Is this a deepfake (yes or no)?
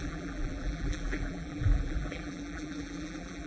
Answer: yes